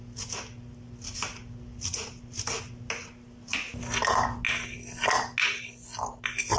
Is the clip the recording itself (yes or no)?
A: yes